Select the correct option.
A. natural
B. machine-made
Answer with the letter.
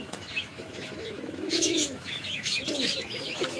B